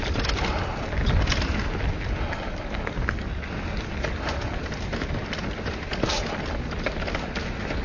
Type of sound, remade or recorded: recorded